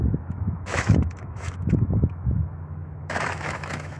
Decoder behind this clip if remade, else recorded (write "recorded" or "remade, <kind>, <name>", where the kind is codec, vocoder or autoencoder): remade, autoencoder, DAC-VAE